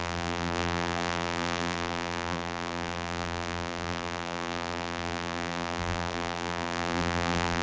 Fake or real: fake